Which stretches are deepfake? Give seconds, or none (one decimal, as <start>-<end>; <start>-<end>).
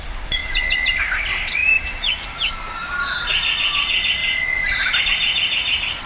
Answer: none